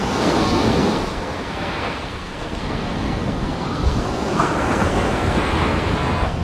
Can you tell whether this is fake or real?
fake